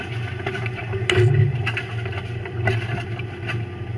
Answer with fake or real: real